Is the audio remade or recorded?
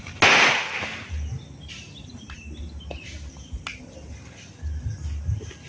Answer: recorded